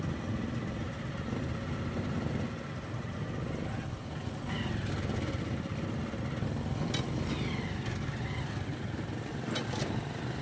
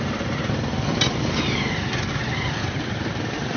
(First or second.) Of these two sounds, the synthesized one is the second